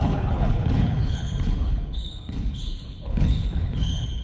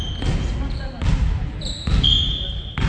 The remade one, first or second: first